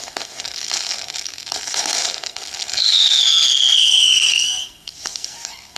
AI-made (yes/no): yes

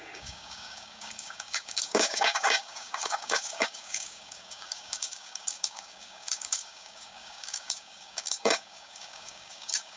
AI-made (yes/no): yes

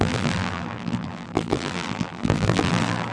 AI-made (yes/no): yes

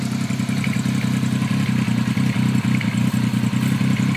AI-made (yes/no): no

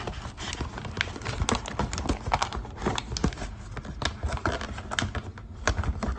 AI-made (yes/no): no